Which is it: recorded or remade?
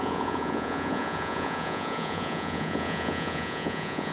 remade